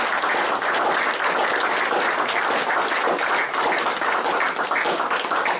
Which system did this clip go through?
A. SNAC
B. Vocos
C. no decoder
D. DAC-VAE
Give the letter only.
C